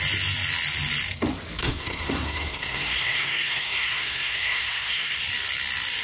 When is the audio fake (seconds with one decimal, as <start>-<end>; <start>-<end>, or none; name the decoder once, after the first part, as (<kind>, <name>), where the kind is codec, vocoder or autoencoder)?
1.6-5.2 (codec, SNAC)